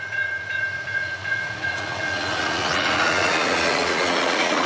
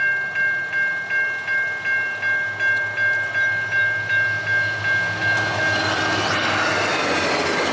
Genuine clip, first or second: second